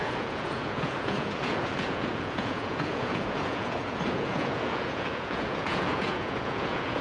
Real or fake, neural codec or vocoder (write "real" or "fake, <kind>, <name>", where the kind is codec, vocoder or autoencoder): fake, vocoder, Vocos